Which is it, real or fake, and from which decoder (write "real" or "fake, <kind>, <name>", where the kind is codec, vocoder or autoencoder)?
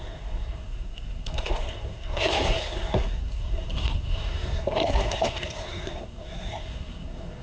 fake, codec, SNAC